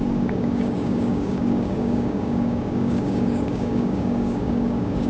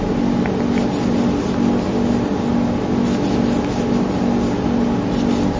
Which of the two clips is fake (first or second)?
first